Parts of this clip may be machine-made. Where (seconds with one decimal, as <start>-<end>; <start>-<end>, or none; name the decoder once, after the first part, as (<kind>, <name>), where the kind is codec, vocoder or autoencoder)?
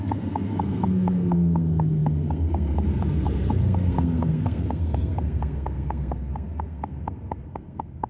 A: 0.0-8.1 (codec, SNAC)